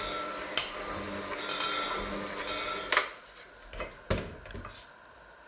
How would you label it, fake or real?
real